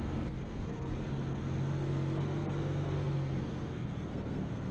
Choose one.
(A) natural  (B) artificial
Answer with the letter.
B